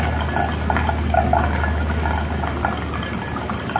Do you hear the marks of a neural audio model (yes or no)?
no